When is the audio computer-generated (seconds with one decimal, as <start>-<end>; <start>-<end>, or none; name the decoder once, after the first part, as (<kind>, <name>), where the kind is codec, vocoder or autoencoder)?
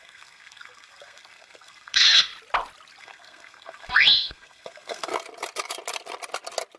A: 0.0-2.3 (codec, SNAC); 3.0-5.1